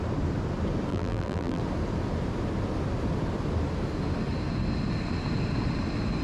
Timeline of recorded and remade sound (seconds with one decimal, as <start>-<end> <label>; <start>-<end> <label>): 0.0-0.9 recorded; 0.9-1.6 remade; 1.6-6.2 recorded